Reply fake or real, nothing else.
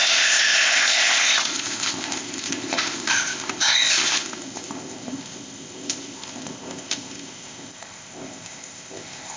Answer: fake